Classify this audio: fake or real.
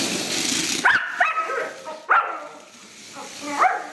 real